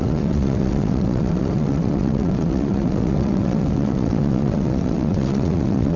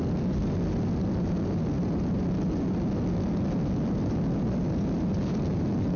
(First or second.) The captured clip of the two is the second